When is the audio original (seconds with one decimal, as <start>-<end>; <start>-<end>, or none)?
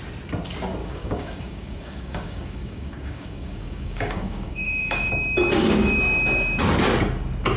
0.0-0.8; 5.1-7.6